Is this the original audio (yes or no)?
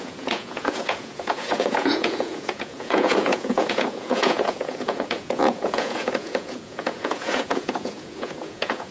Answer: no